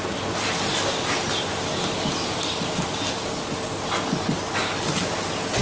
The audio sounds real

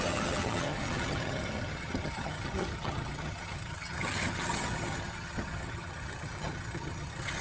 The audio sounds fake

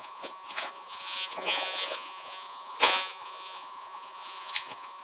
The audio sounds fake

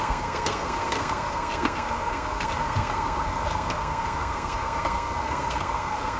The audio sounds fake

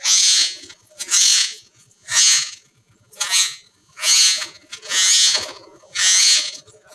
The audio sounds fake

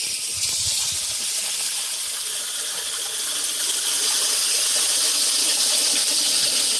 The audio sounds fake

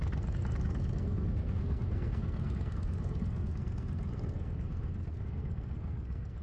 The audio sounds fake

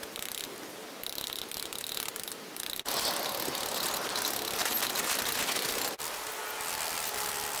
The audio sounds real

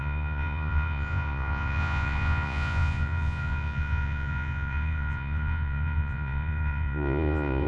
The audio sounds fake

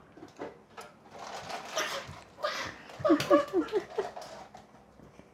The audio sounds real